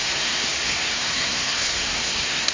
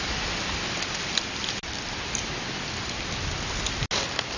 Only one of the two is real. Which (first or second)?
second